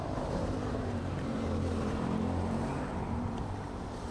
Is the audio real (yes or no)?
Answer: no